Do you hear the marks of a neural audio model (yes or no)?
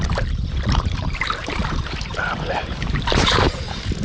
yes